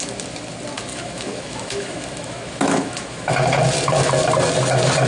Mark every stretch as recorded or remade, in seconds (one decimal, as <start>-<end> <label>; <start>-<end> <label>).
0.0-0.9 recorded; 0.9-3.3 remade; 3.3-5.1 recorded